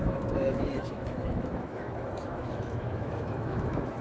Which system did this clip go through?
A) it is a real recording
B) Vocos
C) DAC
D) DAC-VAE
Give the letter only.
D